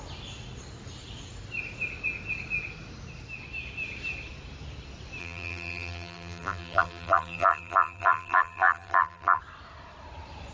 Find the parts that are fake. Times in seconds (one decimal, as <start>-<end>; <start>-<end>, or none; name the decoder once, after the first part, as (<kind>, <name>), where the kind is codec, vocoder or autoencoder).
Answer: 5.2-9.4 (vocoder, BigVGAN v2)